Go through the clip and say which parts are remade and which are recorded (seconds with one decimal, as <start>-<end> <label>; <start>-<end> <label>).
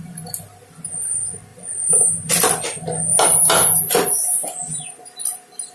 0.0-5.7 recorded